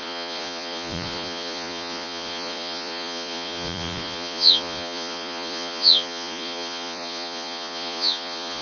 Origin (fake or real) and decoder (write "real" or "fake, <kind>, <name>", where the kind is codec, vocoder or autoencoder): fake, vocoder, Vocos